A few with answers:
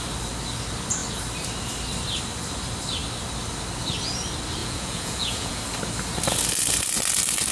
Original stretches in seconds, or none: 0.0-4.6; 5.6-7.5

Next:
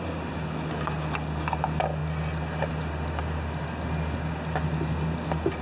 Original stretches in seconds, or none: 0.0-5.6

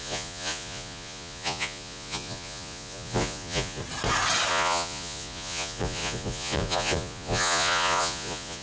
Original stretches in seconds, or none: 3.8-4.5

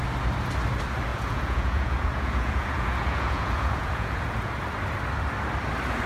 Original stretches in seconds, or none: 0.0-1.1; 4.5-6.1

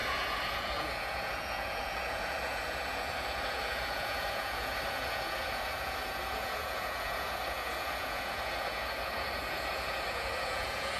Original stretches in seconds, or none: none

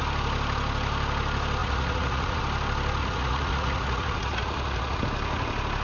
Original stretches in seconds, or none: 0.0-1.6; 2.4-3.0; 5.0-5.8

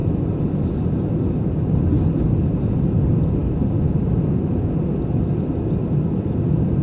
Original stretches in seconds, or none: 0.0-6.8